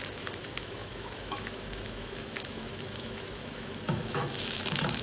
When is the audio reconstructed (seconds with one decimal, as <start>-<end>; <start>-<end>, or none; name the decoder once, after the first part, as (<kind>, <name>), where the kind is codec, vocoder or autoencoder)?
0.0-5.0 (autoencoder, DAC-VAE)